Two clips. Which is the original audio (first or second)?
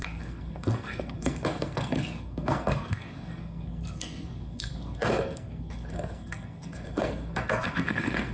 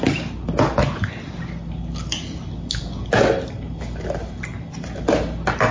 second